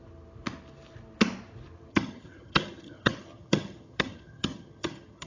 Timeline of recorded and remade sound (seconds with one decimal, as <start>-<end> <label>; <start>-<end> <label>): 0.0-1.9 recorded; 1.9-5.3 remade